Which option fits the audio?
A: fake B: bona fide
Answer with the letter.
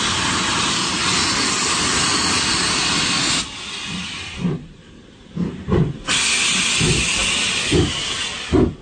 B